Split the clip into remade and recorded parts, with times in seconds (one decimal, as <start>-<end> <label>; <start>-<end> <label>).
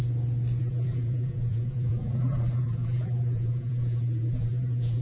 0.0-0.6 recorded; 0.6-5.0 remade